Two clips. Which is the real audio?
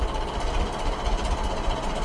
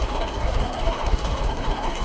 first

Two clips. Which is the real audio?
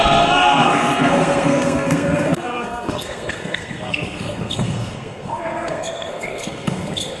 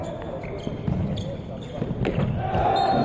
second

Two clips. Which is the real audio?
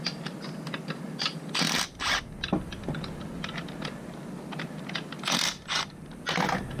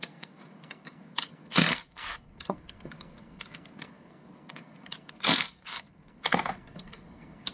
first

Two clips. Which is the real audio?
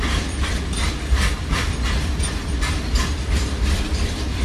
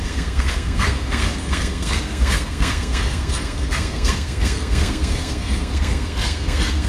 first